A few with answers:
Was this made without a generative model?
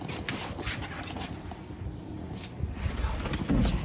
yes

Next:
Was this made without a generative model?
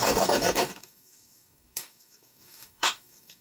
no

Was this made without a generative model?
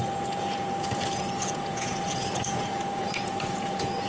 no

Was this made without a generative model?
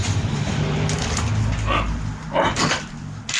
yes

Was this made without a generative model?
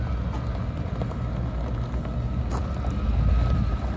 yes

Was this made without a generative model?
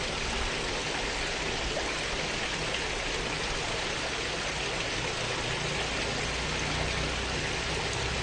yes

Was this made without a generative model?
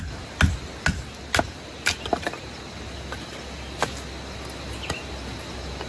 yes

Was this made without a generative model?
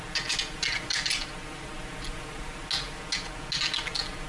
yes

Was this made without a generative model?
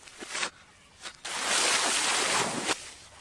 yes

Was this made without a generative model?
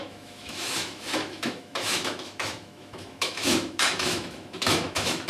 no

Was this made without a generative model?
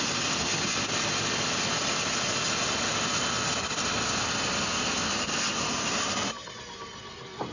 yes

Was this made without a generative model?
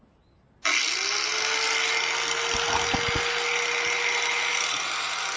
yes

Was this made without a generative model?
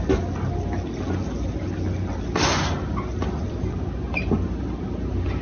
yes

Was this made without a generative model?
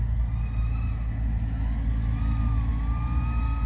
yes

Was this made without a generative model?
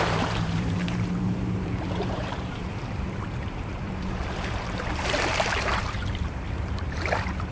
no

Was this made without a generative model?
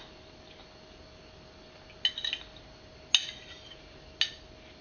yes